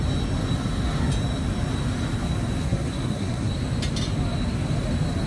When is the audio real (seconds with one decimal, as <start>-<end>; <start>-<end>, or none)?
0.0-2.6; 3.5-5.3